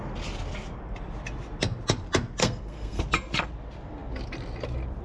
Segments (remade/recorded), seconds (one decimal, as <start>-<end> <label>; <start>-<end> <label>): 0.0-2.4 recorded; 2.4-3.0 remade; 3.0-5.0 recorded